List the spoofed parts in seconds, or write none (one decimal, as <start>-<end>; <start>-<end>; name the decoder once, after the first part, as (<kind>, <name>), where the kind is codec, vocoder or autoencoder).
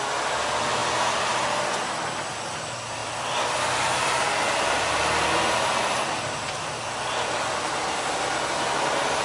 3.0-7.5 (vocoder, BigVGAN v2)